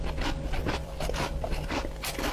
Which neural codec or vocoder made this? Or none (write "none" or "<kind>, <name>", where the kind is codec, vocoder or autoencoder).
vocoder, BigVGAN v2